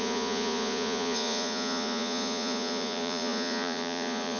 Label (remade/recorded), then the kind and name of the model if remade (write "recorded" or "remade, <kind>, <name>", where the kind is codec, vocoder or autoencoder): remade, vocoder, Vocos